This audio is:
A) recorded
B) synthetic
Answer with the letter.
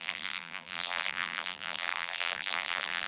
B